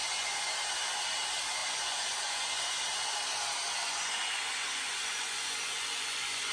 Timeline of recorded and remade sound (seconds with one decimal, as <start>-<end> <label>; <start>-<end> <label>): 0.0-0.5 remade; 0.5-1.6 recorded; 1.6-2.8 remade; 2.8-3.8 recorded; 3.8-6.5 remade